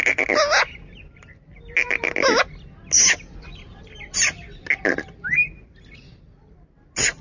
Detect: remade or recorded recorded